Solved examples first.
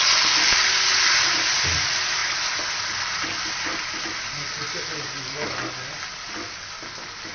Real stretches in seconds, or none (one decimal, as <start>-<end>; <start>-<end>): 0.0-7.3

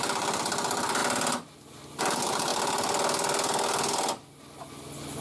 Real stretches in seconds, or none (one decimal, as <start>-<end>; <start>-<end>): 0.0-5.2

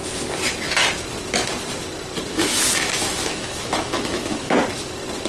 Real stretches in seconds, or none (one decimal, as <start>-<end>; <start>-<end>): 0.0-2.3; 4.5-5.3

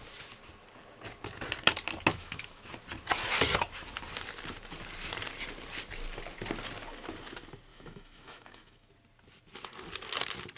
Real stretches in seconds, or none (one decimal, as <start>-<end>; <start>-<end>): 0.0-2.1; 2.7-7.7; 8.9-10.6

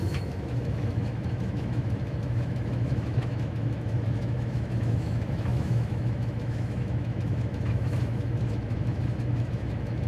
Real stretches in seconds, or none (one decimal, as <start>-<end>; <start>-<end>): none

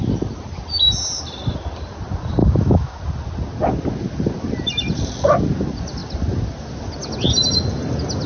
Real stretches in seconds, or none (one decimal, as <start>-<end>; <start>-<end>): 0.0-2.4; 3.0-8.3